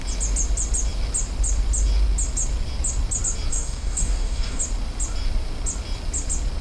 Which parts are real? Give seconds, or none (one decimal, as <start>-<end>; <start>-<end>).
0.0-3.5; 4.6-6.6

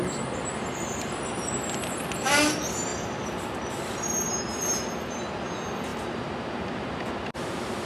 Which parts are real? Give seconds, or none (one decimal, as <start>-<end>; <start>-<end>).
0.0-7.9